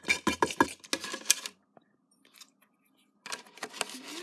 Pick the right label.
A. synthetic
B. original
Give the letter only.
B